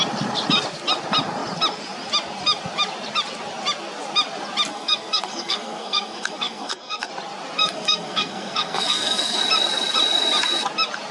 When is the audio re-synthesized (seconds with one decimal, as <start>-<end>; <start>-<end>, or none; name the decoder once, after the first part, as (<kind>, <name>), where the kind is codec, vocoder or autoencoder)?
4.7-7.1 (codec, SNAC); 7.6-9.4